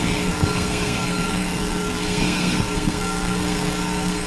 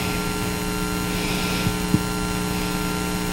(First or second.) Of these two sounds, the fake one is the first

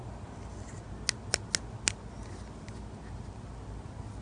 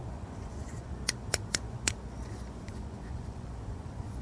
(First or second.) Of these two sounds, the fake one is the second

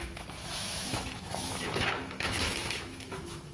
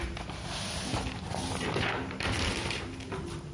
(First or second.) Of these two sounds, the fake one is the first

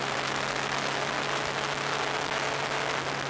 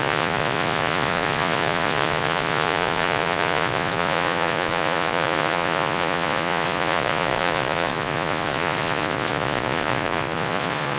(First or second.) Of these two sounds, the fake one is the second